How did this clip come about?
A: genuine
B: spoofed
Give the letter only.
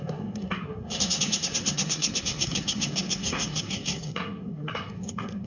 B